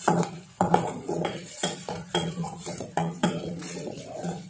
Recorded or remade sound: remade